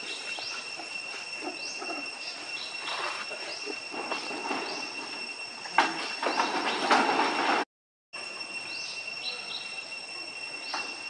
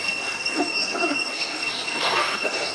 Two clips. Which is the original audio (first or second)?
first